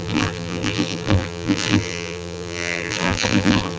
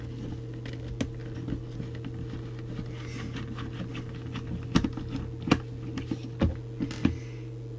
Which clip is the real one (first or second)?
second